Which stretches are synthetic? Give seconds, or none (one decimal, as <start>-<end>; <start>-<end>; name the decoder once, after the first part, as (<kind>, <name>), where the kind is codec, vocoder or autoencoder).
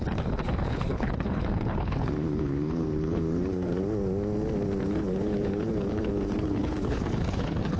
0.0-3.8 (codec, HILCodec); 4.9-7.8